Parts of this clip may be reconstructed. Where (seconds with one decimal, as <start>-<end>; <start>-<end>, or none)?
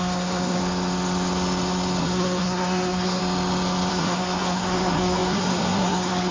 0.0-0.6; 2.0-3.2; 3.9-6.3